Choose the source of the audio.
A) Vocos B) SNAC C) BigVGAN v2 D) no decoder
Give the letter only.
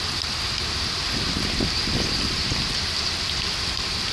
C